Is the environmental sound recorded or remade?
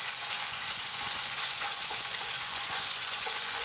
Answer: remade